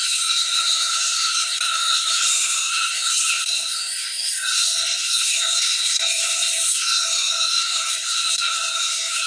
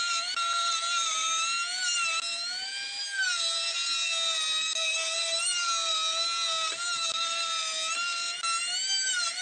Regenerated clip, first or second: first